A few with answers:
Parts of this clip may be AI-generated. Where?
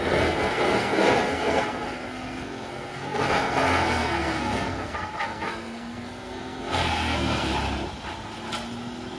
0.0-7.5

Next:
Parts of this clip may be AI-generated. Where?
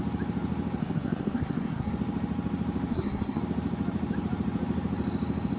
0.8-1.9; 2.9-3.4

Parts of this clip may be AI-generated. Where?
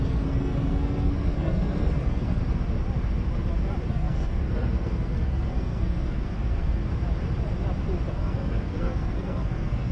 0.0-2.4; 3.9-6.9; 8.1-9.9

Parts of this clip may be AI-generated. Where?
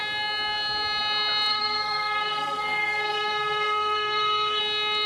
1.5-4.6